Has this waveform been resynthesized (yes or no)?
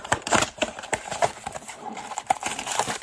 yes